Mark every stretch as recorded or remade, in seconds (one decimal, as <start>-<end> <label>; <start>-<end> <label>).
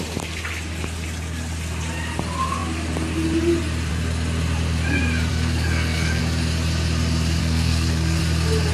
0.0-5.3 recorded; 5.3-6.2 remade; 6.2-7.4 recorded; 7.4-8.2 remade; 8.2-8.7 recorded